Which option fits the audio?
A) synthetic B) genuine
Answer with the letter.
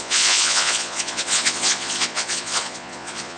A